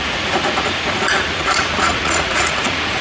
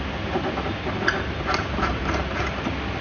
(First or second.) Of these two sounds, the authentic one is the second